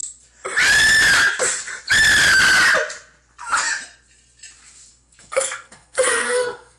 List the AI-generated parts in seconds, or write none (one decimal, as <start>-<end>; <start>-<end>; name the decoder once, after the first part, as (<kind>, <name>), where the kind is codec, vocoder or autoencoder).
4.9-6.8 (codec, SNAC)